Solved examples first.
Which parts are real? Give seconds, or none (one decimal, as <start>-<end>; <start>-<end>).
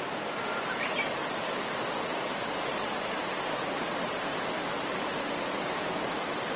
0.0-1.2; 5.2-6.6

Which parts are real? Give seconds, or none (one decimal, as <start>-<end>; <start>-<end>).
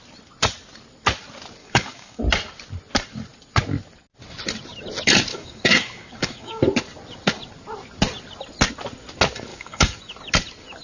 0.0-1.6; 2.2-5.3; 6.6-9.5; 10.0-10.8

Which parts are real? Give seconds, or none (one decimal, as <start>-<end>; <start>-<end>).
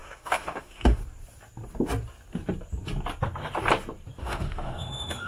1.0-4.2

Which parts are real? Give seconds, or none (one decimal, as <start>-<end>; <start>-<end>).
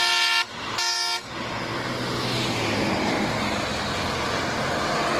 0.0-5.2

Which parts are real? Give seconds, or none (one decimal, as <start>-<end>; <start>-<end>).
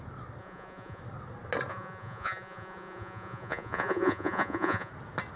0.0-0.4; 1.0-1.7; 4.9-5.4